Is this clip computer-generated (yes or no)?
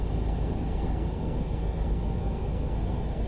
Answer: yes